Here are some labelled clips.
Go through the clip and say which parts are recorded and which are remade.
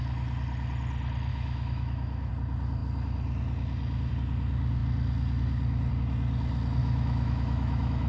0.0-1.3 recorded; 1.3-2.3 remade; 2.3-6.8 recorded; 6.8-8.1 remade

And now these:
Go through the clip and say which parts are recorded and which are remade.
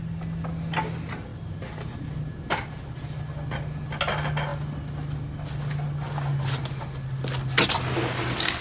0.0-8.6 recorded